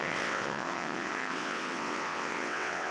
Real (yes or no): no